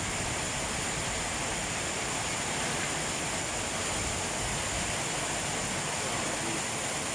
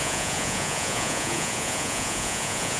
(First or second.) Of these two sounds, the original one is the first